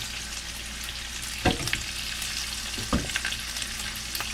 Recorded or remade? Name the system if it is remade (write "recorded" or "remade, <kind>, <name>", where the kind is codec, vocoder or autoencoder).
recorded